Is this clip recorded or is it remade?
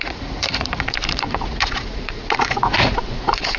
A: remade